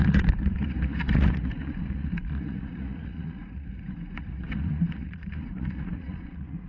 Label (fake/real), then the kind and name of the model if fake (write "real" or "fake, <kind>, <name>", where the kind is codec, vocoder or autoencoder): fake, vocoder, Vocos